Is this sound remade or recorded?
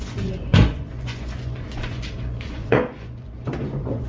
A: remade